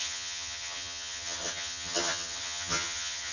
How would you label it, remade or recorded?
remade